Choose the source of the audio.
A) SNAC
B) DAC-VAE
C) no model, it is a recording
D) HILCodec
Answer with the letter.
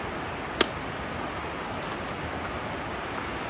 C